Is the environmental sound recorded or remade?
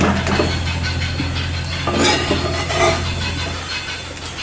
recorded